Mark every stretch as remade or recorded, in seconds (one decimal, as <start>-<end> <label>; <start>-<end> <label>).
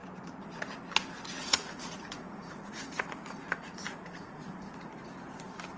0.0-1.4 recorded; 1.4-4.9 remade; 4.9-5.8 recorded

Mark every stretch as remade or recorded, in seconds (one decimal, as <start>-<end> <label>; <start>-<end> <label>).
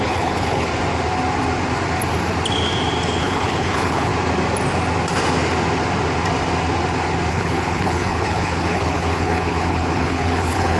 0.0-0.7 remade; 0.7-3.2 recorded; 3.2-4.1 remade; 4.1-7.3 recorded; 7.3-10.8 remade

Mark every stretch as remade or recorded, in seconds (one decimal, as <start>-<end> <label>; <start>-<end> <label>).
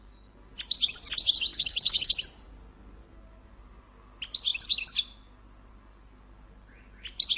0.0-1.5 recorded; 1.5-2.1 remade; 2.1-7.4 recorded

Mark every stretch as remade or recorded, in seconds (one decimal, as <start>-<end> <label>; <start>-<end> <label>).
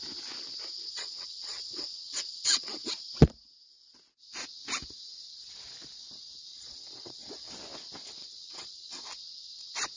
0.0-0.9 recorded; 0.9-2.9 remade; 2.9-6.5 recorded; 6.5-7.5 remade; 7.5-8.2 recorded; 8.2-9.0 remade; 9.0-10.0 recorded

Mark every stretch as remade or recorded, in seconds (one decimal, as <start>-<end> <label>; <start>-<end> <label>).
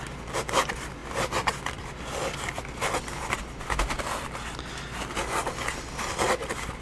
0.0-6.8 recorded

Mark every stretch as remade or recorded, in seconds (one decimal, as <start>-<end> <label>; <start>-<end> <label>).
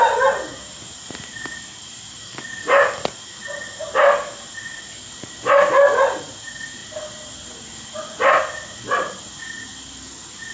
0.0-10.5 recorded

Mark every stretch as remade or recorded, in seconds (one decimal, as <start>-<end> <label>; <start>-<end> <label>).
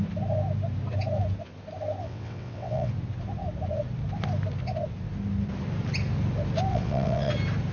0.0-2.0 recorded; 2.0-2.9 remade; 2.9-6.7 recorded; 6.7-7.3 remade; 7.3-7.7 recorded